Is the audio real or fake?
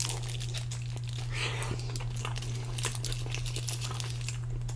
real